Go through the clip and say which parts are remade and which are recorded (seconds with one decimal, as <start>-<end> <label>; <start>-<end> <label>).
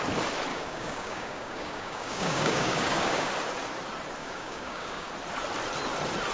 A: 0.0-0.5 recorded; 0.5-3.3 remade; 3.3-4.2 recorded; 4.2-5.1 remade; 5.1-6.3 recorded